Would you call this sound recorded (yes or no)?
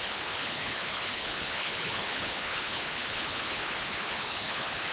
no